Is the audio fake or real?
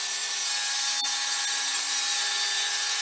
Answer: real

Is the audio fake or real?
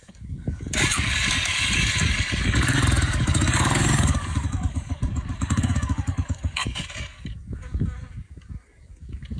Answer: fake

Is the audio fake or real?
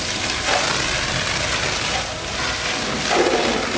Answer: real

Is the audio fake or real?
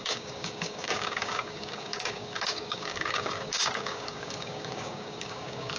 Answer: fake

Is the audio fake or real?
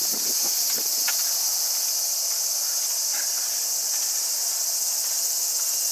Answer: real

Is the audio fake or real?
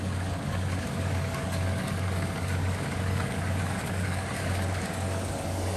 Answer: fake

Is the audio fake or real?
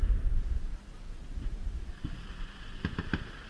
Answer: real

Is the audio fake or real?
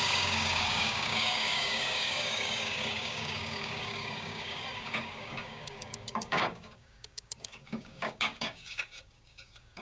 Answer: fake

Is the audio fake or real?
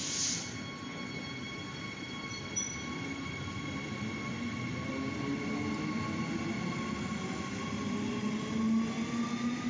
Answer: real